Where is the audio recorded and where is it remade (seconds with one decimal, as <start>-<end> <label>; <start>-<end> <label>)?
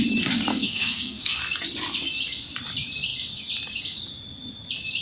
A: 0.0-0.5 recorded; 0.5-1.4 remade; 1.4-5.0 recorded